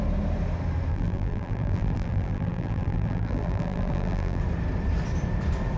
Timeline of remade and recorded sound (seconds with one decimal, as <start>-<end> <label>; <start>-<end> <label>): 0.0-0.9 recorded; 0.9-4.4 remade; 4.4-5.8 recorded